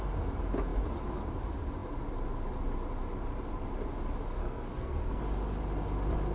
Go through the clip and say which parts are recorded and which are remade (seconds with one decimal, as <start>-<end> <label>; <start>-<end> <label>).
0.0-4.4 recorded; 4.4-5.2 remade; 5.2-6.3 recorded